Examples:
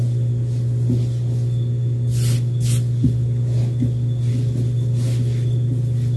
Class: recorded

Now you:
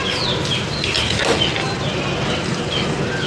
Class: recorded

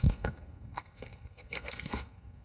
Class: remade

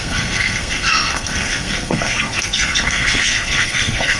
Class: remade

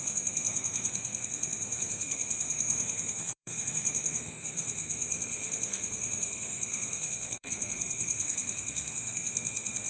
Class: remade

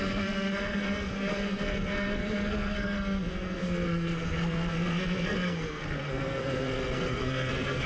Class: remade